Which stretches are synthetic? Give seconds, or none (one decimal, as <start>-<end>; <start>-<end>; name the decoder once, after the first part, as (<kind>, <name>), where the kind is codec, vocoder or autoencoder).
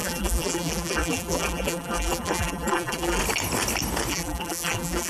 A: 0.0-3.2 (vocoder, BigVGAN v2); 4.1-5.1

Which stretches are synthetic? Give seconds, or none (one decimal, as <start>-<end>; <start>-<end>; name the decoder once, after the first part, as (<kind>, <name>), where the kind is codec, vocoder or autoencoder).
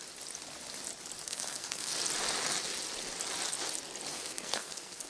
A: 1.2-1.9 (codec, SNAC); 4.1-5.1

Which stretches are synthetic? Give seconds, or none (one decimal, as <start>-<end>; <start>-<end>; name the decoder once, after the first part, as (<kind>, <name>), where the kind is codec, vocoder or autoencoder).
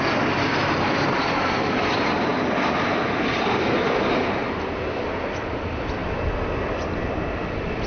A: 0.0-4.4 (vocoder, BigVGAN v2); 5.5-6.0; 6.7-7.9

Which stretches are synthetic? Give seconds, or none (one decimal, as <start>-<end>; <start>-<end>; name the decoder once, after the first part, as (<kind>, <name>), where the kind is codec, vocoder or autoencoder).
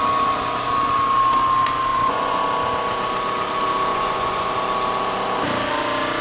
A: 1.9-2.4 (vocoder, Vocos); 3.9-4.5